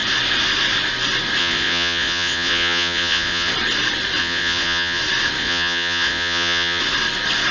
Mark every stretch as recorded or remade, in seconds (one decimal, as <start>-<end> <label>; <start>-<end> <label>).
0.0-1.4 recorded; 1.4-3.5 remade; 3.5-4.2 recorded; 4.2-5.0 remade; 5.0-5.4 recorded; 5.4-6.8 remade; 6.8-7.5 recorded